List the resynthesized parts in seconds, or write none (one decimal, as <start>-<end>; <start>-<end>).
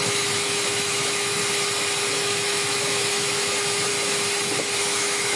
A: 0.0-1.4; 2.1-3.9; 4.8-5.4